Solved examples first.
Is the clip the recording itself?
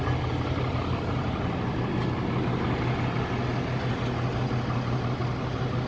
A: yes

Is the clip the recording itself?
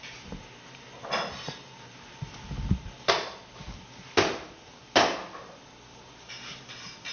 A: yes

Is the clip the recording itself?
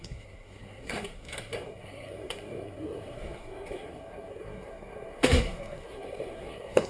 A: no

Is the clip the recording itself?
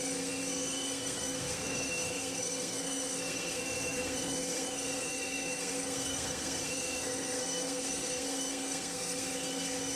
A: no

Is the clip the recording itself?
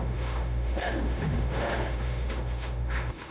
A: no